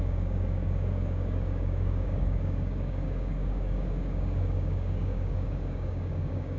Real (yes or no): no